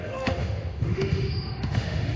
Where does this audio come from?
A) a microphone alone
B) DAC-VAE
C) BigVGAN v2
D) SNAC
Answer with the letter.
B